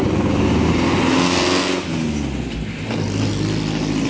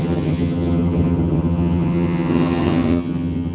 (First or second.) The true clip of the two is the first